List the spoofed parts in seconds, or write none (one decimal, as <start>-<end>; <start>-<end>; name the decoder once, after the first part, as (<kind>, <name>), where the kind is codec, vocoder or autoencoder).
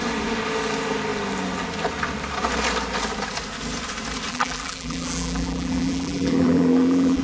4.3-7.2 (vocoder, BigVGAN v2)